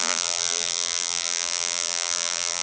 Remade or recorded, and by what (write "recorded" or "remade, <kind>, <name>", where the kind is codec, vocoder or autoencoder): remade, vocoder, BigVGAN v2